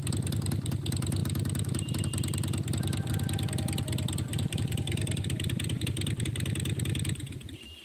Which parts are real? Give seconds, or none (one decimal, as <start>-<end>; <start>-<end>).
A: 0.0-4.3; 6.1-7.8